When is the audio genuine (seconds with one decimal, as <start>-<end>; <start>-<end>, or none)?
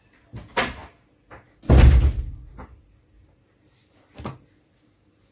0.0-5.3